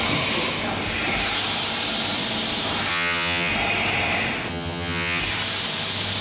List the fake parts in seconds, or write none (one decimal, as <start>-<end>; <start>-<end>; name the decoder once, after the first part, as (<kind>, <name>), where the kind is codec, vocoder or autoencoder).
2.9-3.5 (vocoder, HiFi-GAN); 4.5-5.2